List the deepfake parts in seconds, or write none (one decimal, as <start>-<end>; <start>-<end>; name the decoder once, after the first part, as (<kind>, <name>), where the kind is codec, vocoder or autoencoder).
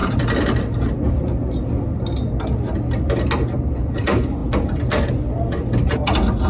0.0-0.6 (vocoder, BigVGAN v2)